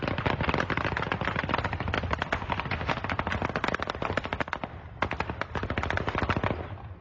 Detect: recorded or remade recorded